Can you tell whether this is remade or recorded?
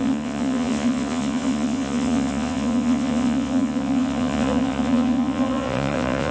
remade